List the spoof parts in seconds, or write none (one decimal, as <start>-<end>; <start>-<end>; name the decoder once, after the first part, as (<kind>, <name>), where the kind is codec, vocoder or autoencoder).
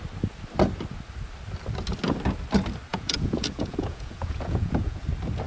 2.9-5.0 (vocoder, Vocos)